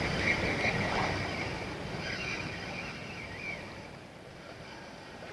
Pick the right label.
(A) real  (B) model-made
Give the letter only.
A